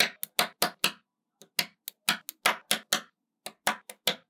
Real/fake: real